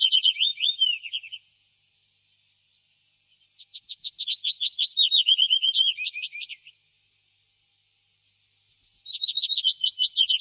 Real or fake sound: real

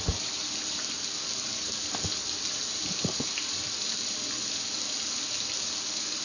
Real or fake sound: real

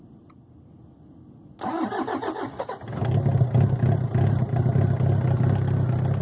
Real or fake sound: real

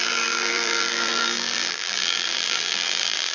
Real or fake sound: fake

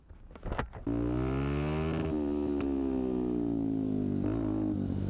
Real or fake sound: real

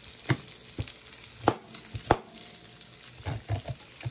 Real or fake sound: real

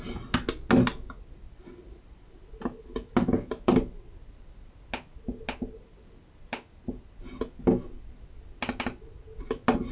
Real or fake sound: real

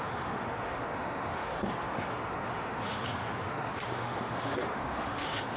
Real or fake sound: fake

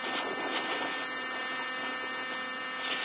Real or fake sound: real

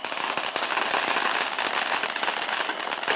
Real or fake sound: real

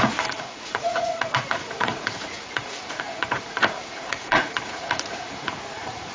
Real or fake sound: fake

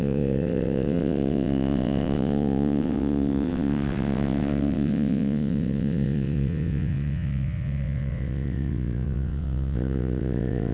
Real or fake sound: fake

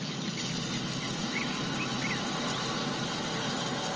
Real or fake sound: real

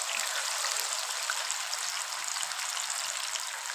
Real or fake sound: real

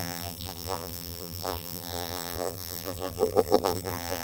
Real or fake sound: fake